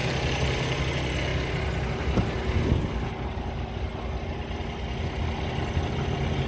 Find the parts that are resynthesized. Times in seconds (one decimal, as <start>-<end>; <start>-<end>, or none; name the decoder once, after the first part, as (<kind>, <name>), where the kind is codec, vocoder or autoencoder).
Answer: 0.0-0.8 (vocoder, BigVGAN v2)